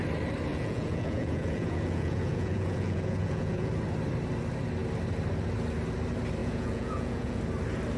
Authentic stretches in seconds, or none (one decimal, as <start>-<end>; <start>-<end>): 0.0-0.5; 3.7-6.4; 7.4-8.0

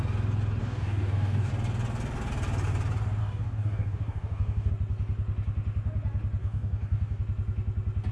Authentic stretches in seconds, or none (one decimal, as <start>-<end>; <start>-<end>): 0.0-0.6; 1.5-3.2; 4.7-6.4; 7.2-8.1

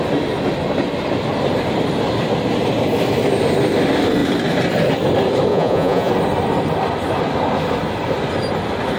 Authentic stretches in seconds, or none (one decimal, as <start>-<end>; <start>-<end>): 0.0-5.5; 6.1-9.0

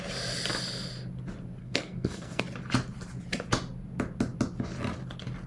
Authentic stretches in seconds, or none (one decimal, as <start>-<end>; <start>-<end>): 0.0-1.6; 2.4-5.5

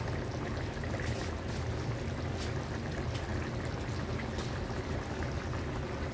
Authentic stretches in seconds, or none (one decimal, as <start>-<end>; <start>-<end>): 0.0-6.1

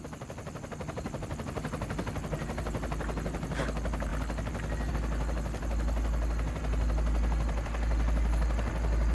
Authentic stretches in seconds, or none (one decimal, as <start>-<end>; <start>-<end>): 0.0-9.1